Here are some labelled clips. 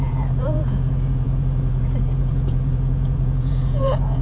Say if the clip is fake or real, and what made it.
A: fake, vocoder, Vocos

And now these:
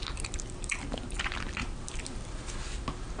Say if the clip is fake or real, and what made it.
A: real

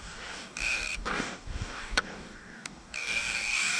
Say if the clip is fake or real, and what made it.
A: fake, codec, DAC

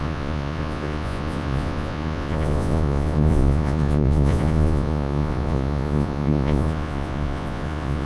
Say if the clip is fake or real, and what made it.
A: fake, vocoder, Vocos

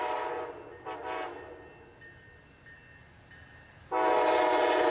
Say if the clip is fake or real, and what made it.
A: real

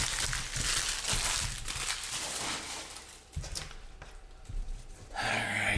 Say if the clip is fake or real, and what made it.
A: real